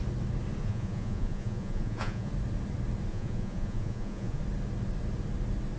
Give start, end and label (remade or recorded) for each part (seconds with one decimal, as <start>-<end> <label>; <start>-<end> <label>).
0.0-0.6 recorded; 0.6-2.3 remade; 2.3-3.1 recorded; 3.1-4.4 remade; 4.4-5.8 recorded